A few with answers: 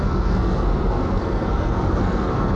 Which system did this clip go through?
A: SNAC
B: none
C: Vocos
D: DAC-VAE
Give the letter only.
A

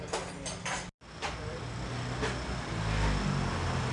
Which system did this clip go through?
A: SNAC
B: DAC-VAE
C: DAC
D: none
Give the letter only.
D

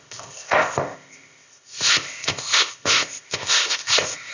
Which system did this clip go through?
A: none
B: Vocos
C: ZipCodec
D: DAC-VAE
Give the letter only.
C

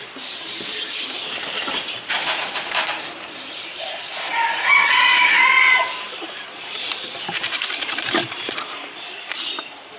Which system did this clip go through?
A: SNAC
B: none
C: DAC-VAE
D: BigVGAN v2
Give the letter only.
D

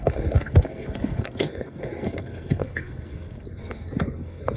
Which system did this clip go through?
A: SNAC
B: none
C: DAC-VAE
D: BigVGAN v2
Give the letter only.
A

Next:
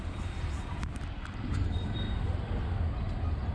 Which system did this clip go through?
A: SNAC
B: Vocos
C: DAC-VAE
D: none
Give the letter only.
D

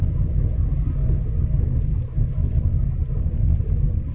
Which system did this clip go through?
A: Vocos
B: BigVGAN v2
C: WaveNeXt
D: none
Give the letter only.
D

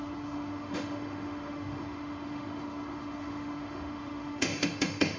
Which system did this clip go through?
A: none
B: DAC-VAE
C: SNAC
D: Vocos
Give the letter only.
B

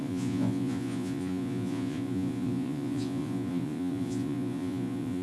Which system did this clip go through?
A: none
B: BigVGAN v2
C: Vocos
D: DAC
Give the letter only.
C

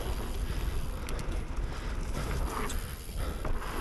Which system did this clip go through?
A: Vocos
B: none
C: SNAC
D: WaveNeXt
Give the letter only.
B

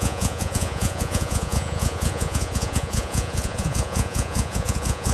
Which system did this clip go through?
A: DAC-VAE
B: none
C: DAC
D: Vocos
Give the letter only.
D